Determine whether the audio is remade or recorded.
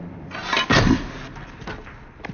recorded